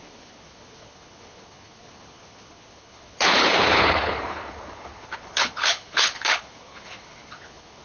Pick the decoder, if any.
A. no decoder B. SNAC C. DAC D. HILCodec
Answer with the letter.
D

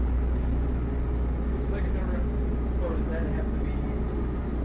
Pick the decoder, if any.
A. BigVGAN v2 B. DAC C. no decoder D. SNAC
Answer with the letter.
C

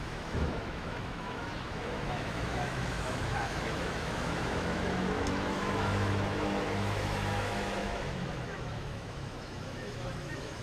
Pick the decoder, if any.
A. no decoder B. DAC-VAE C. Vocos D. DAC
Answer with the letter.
B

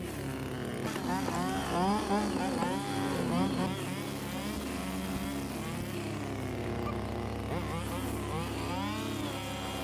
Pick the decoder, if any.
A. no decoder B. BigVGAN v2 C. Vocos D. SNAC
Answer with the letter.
A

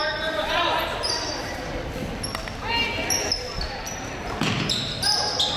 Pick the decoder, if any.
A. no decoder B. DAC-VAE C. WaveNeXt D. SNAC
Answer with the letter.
A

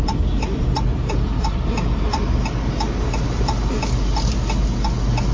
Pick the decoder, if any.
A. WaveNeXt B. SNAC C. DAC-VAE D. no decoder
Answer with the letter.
D